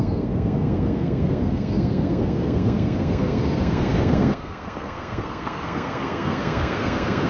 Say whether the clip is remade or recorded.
remade